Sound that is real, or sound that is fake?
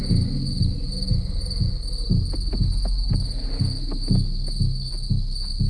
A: real